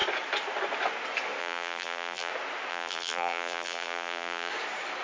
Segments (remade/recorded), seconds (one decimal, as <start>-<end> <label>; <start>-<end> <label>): 0.0-1.4 recorded; 1.4-2.3 remade; 2.3-2.7 recorded; 2.7-4.5 remade; 4.5-5.0 recorded